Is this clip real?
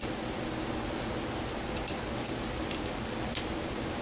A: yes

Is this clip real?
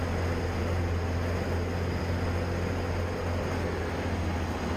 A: yes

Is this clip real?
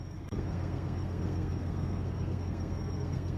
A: no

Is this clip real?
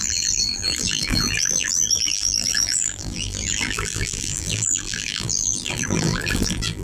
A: no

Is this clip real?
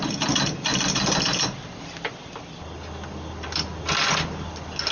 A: yes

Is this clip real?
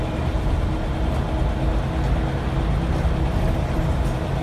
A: yes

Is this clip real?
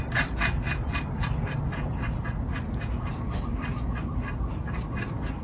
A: yes